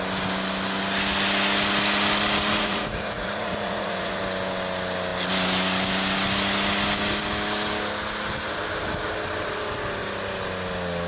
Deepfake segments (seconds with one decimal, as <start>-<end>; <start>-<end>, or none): 2.5-4.2